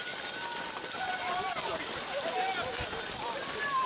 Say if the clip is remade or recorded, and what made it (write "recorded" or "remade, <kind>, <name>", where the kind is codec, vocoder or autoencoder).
recorded